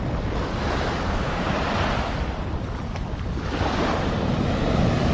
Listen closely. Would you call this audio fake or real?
real